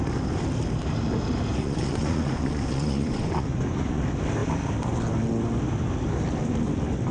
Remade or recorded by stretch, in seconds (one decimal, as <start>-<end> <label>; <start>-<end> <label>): 0.0-1.6 recorded; 1.6-4.0 remade; 4.0-7.1 recorded